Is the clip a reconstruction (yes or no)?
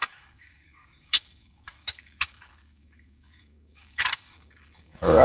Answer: yes